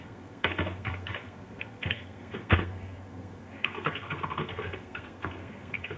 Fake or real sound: fake